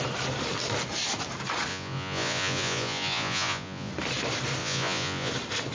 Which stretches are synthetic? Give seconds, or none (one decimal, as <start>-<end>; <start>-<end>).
1.7-3.9; 4.6-5.3